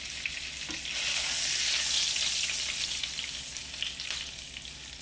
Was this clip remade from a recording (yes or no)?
no